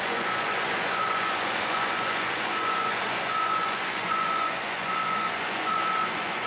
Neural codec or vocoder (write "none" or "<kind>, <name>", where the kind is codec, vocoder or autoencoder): vocoder, Vocos